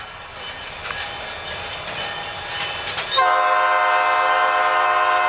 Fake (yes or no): no